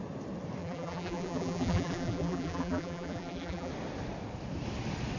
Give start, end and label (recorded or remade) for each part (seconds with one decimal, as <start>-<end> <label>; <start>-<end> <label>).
0.0-0.6 recorded; 0.6-3.7 remade; 3.7-5.2 recorded

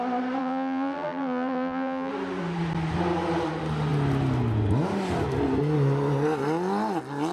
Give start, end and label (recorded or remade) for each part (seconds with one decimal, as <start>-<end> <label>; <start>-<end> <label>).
0.0-0.4 recorded; 0.4-2.1 remade; 2.1-7.3 recorded

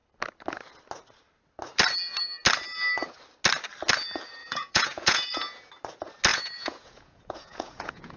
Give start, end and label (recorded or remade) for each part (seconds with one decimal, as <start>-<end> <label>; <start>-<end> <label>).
0.0-4.4 recorded; 4.4-5.7 remade; 5.7-6.3 recorded; 6.3-8.2 remade

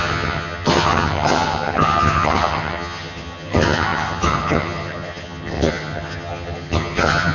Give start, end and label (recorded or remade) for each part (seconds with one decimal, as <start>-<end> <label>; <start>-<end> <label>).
0.0-7.3 remade

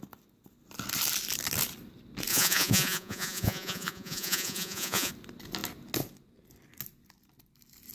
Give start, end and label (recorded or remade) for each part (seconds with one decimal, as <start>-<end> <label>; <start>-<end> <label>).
0.0-2.3 recorded; 2.3-5.1 remade; 5.1-7.9 recorded

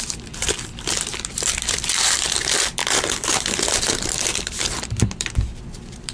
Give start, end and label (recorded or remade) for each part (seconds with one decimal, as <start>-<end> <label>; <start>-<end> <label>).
0.0-6.1 remade

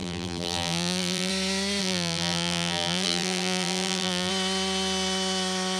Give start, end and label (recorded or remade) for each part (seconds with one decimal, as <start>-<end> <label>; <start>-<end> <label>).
0.0-1.3 remade; 1.3-1.8 recorded; 1.8-4.3 remade; 4.3-5.8 recorded

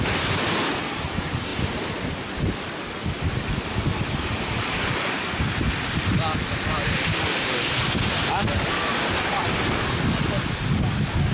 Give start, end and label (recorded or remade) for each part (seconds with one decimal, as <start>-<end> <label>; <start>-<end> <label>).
0.0-11.3 recorded